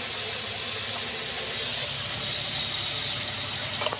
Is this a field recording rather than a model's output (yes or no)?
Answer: yes